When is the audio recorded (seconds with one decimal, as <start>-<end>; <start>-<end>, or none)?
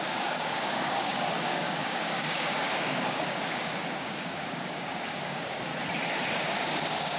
5.7-6.3